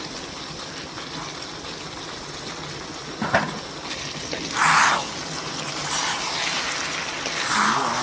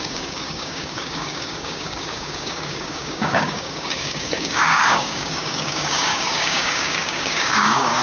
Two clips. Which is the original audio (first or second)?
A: first